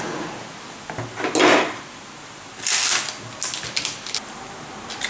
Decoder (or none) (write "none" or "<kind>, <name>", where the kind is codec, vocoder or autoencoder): none